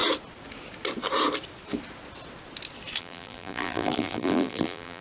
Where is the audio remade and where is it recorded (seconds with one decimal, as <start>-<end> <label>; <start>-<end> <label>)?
0.0-3.0 recorded; 3.0-5.0 remade